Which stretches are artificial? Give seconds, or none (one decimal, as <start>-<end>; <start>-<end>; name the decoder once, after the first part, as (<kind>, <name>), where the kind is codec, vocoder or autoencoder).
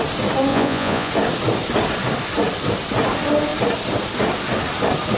0.5-1.1 (vocoder, Vocos)